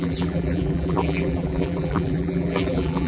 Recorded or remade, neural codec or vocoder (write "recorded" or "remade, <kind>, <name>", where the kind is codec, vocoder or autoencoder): remade, vocoder, BigVGAN v2